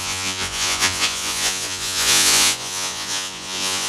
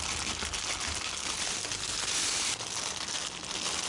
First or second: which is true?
second